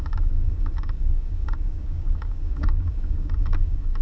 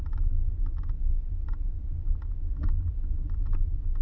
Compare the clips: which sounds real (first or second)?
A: second